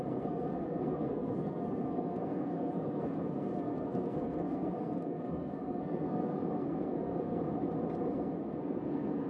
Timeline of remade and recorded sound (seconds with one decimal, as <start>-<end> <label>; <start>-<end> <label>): 0.0-7.4 remade; 7.4-8.1 recorded; 8.1-9.3 remade